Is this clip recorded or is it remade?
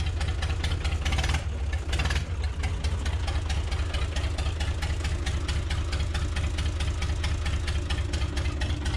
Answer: recorded